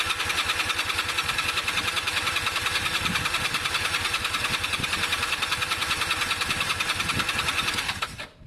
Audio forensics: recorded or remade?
remade